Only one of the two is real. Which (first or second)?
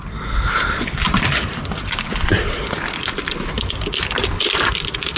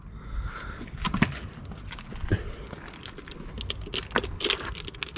second